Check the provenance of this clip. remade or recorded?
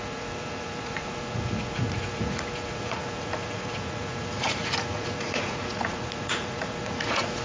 remade